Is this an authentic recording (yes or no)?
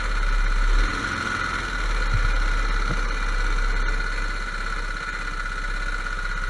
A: yes